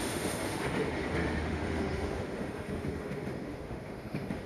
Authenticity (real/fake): fake